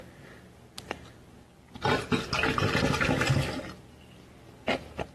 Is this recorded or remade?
recorded